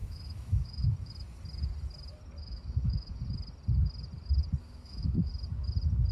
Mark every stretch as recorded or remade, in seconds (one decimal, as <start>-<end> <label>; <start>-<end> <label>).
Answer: 0.0-1.1 remade; 1.1-2.4 recorded; 2.4-3.2 remade; 3.2-4.6 recorded; 4.6-5.3 remade; 5.3-6.1 recorded